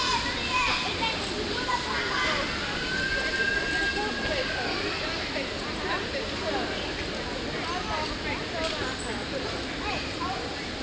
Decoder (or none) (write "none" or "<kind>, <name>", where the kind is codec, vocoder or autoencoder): none